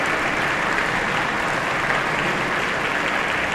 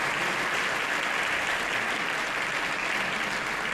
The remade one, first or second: first